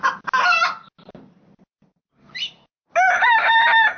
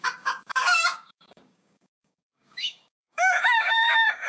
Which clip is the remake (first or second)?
second